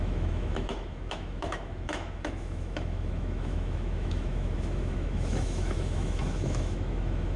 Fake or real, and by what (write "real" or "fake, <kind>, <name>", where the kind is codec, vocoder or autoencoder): fake, autoencoder, DAC-VAE